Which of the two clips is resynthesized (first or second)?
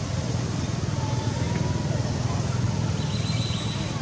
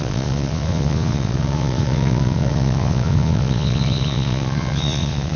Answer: second